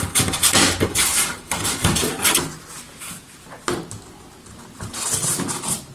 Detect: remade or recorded recorded